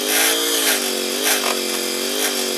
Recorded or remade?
recorded